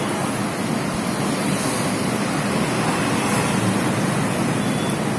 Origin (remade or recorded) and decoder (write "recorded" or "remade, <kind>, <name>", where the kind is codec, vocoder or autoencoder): recorded